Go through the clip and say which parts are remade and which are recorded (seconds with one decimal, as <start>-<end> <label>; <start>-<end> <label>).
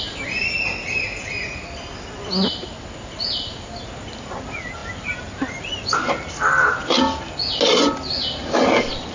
0.0-9.1 recorded